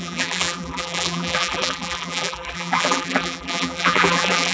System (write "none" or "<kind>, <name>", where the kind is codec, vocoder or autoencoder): vocoder, BigVGAN v2